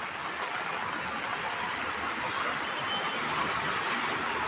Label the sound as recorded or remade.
recorded